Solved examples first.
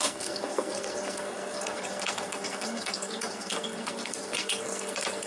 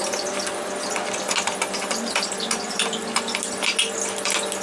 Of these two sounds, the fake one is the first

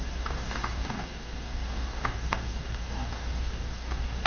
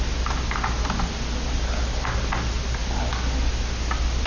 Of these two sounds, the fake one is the first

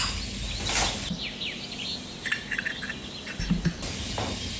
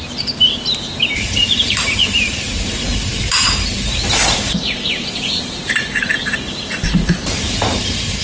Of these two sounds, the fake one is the second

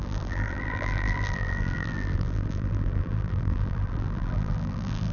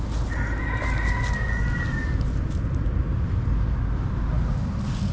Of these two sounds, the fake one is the first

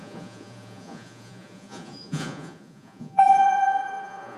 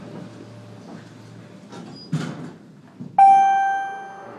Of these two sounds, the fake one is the first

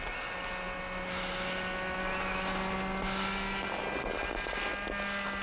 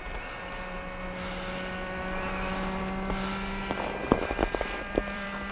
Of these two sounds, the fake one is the second